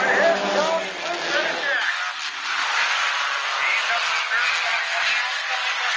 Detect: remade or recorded recorded